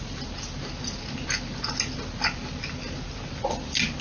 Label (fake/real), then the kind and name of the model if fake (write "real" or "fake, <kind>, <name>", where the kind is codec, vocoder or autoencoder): real